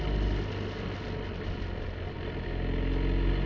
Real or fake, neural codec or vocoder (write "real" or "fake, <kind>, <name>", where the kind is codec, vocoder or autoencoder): real